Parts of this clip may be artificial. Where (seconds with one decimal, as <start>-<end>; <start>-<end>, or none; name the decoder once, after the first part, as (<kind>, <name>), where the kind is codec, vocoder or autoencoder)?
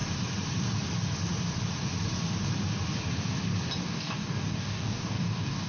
3.8-5.7 (codec, DAC)